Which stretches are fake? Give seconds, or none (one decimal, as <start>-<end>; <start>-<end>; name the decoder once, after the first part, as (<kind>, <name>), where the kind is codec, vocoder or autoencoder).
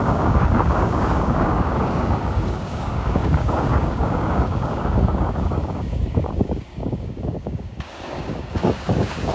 0.0-9.3 (codec, DAC)